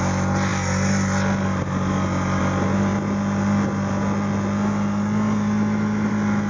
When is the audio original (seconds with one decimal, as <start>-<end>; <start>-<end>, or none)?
0.0-6.5